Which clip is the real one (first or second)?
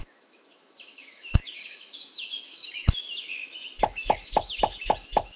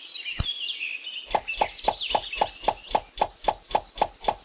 second